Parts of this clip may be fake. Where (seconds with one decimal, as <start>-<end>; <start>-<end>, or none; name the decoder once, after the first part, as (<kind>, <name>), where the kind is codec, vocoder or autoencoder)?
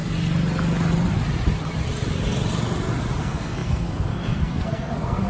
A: 3.2-5.3 (codec, SNAC)